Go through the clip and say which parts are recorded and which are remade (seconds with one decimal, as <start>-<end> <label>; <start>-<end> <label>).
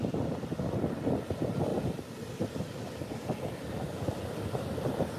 0.0-5.2 recorded